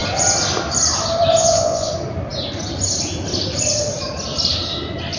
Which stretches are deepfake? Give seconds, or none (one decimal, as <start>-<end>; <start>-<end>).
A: 1.4-1.9